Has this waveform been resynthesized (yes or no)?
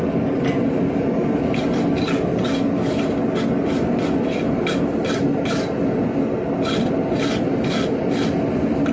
no